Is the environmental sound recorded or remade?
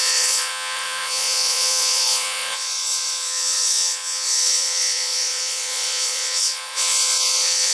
remade